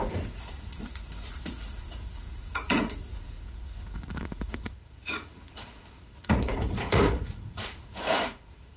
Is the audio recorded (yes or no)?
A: no